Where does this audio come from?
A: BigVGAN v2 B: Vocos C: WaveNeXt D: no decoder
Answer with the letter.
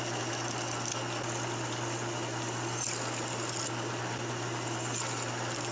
D